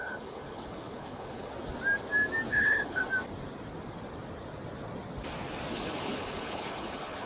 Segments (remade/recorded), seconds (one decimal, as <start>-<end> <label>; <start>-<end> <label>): 0.0-1.5 remade; 1.5-2.5 recorded; 2.5-3.0 remade; 3.0-5.7 recorded; 5.7-7.3 remade